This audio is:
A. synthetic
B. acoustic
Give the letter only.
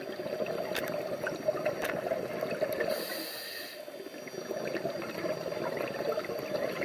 B